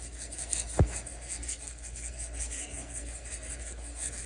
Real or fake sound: fake